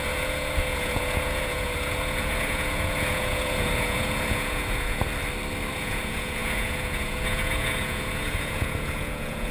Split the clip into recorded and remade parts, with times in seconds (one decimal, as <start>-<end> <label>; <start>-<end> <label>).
0.0-5.1 remade; 5.1-5.7 recorded; 5.7-9.5 remade

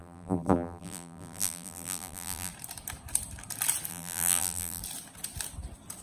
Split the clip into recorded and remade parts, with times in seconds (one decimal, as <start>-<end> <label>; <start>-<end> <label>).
0.0-2.5 remade; 2.5-3.9 recorded; 3.9-4.8 remade; 4.8-6.0 recorded

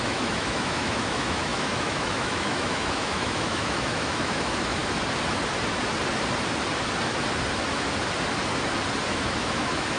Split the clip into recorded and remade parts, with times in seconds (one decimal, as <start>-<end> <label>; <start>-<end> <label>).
0.0-4.8 remade; 4.8-9.1 recorded; 9.1-10.0 remade

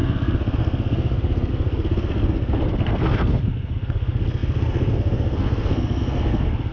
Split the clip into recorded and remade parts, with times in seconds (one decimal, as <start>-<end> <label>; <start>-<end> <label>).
0.0-6.7 remade

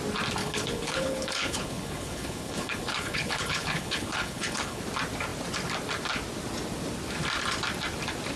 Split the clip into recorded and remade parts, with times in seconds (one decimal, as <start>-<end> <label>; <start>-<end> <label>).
0.0-0.4 recorded; 0.4-4.8 remade; 4.8-8.4 recorded

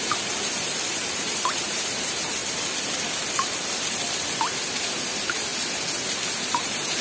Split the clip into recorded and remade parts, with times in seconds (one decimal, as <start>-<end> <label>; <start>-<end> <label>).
0.0-2.4 remade; 2.4-4.8 recorded; 4.8-5.5 remade; 5.5-6.5 recorded; 6.5-7.0 remade

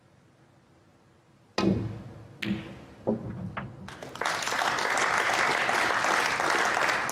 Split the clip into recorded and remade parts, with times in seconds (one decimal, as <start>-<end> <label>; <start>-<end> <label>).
0.0-7.1 recorded